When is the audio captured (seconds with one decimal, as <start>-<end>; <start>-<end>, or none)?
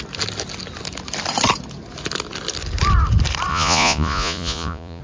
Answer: 0.0-3.5